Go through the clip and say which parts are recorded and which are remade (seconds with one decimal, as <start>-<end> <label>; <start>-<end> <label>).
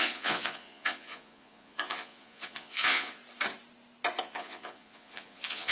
0.0-3.2 remade; 3.2-4.2 recorded; 4.2-5.7 remade